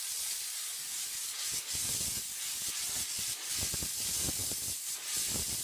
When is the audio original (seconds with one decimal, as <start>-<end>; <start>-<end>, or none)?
0.0-5.6